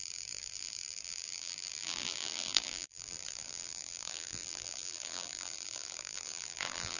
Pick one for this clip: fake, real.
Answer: fake